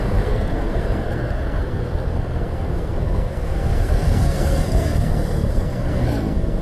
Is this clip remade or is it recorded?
remade